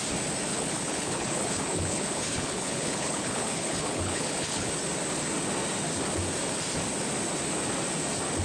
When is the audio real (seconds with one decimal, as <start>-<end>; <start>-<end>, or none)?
0.0-0.5; 4.7-8.4